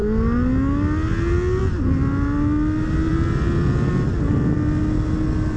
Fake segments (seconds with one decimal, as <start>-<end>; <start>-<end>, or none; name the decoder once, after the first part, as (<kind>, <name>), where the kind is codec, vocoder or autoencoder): none